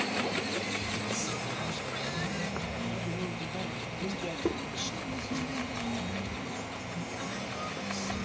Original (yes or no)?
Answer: yes